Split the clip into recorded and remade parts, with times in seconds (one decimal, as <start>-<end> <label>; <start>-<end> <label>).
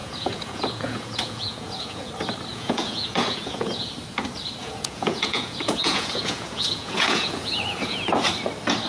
0.0-2.1 remade; 2.1-2.5 recorded; 2.5-3.9 remade; 3.9-4.6 recorded; 4.6-8.1 remade; 8.1-8.9 recorded